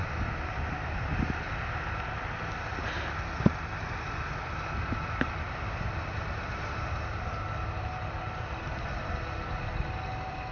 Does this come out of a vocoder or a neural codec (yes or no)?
no